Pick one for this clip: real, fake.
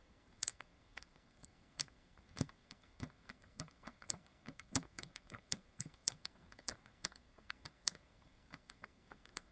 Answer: fake